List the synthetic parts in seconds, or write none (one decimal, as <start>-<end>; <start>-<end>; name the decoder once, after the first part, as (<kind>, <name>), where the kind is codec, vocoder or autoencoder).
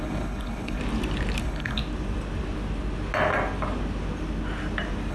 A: 0.0-0.8 (codec, HILCodec); 1.4-1.8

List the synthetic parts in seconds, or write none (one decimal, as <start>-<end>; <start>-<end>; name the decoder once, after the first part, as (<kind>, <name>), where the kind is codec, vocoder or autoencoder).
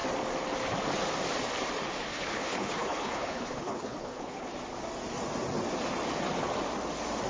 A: 2.1-4.5 (codec, HILCodec)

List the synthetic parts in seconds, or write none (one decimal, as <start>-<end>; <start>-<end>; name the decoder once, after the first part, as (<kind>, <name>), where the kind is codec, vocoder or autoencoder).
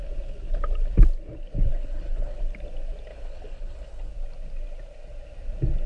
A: 1.7-2.4 (codec, HILCodec); 3.1-4.1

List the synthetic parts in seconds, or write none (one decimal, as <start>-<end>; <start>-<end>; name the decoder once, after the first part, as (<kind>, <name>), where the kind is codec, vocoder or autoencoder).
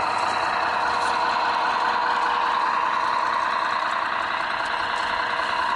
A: none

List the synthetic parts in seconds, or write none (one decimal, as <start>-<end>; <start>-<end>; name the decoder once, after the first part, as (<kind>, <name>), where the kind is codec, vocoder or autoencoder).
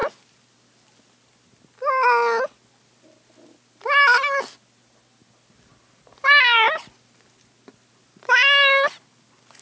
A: none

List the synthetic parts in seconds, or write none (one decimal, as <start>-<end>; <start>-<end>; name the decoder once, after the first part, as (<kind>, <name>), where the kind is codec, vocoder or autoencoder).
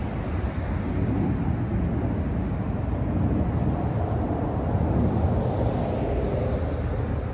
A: none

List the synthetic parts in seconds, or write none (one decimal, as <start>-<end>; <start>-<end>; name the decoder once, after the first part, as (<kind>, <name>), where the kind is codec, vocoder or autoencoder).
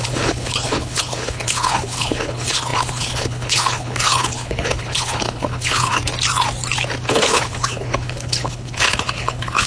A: 0.0-6.0 (codec, HILCodec); 7.1-9.7